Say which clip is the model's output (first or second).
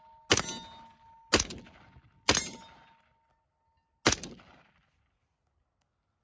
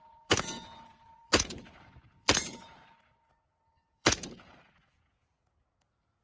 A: second